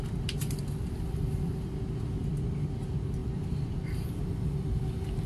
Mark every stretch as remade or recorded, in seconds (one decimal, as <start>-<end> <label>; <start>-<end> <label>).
0.0-5.3 recorded